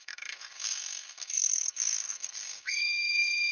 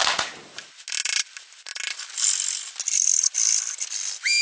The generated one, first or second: first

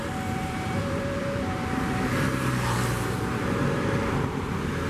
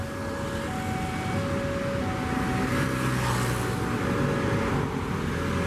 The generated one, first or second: first